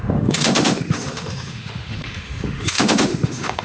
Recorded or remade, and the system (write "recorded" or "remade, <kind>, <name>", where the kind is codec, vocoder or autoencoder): remade, autoencoder, DAC-VAE